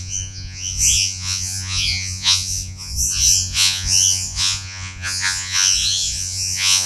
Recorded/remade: remade